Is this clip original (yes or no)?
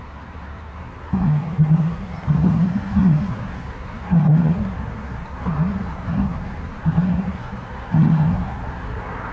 no